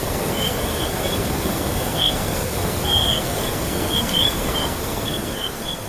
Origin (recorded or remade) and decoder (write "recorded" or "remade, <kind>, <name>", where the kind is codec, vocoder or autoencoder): remade, codec, SNAC